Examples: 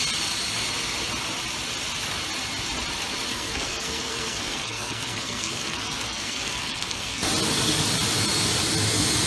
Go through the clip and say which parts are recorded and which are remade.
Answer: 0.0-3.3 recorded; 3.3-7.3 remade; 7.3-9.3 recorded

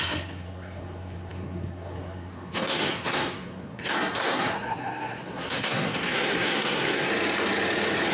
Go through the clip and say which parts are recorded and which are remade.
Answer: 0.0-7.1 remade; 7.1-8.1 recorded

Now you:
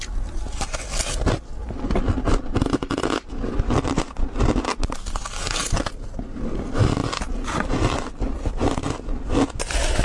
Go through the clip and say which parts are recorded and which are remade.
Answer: 0.0-10.0 recorded

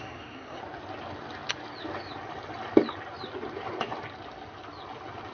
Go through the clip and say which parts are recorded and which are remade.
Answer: 0.0-0.6 remade; 0.6-5.3 recorded